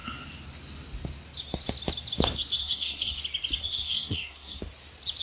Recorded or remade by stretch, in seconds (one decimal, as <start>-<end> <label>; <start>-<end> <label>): 0.0-2.6 recorded; 2.6-3.2 remade; 3.2-3.6 recorded; 3.6-4.6 remade; 4.6-5.2 recorded